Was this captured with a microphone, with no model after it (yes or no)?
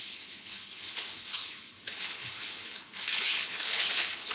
no